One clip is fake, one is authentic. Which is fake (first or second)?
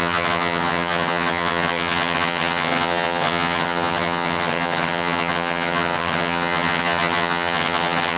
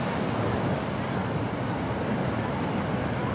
first